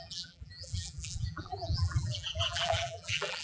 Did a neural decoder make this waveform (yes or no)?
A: yes